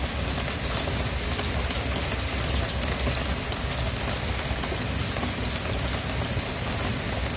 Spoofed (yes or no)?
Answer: no